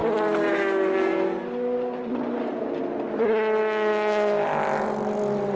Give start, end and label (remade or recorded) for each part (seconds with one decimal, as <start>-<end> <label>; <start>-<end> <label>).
0.0-5.6 recorded